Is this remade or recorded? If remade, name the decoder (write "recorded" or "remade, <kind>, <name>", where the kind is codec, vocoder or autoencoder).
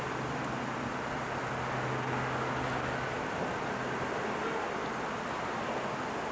recorded